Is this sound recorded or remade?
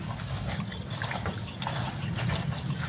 recorded